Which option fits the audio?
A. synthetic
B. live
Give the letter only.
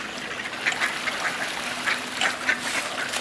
B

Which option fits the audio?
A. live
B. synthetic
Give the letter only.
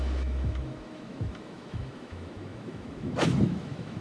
B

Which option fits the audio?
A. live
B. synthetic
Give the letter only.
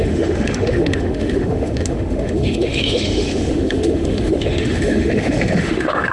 B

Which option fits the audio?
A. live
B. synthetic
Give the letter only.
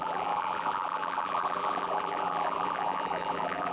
B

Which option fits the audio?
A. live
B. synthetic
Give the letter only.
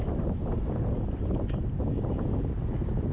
A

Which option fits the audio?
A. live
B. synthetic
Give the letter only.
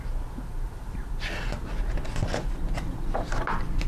A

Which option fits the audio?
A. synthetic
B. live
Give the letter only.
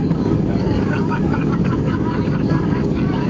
A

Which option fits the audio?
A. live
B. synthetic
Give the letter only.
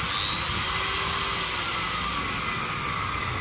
A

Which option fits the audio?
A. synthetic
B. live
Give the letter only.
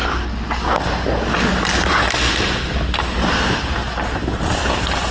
B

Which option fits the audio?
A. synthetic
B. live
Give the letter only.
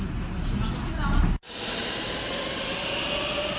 B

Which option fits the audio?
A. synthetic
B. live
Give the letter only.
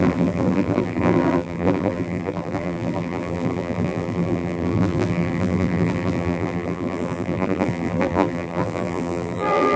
A